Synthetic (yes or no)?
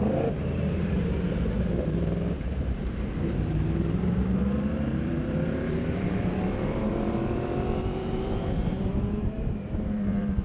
yes